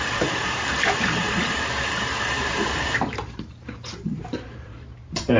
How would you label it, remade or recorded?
remade